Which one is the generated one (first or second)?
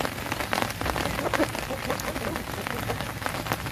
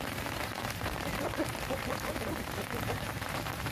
second